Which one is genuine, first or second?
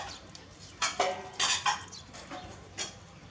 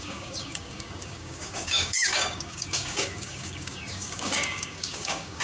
first